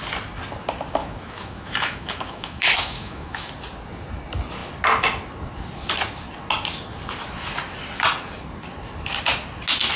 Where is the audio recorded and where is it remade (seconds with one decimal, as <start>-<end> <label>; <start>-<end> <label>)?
0.0-1.0 recorded; 1.0-3.5 remade; 3.5-10.0 recorded